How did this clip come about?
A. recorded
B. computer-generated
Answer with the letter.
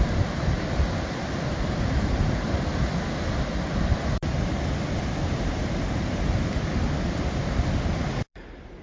A